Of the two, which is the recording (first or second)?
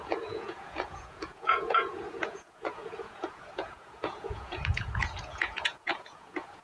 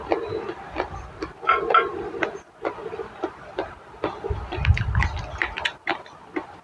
second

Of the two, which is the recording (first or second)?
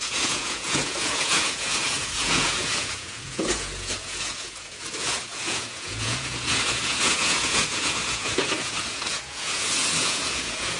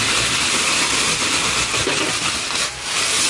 second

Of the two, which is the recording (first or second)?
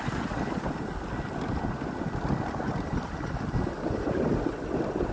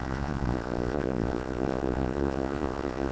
first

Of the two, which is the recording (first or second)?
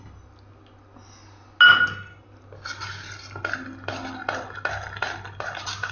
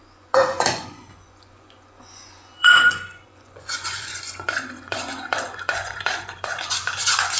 first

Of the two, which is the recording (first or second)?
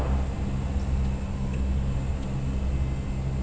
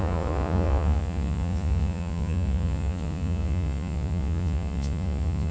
first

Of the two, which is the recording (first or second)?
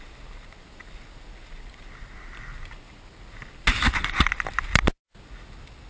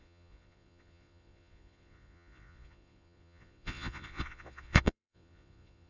first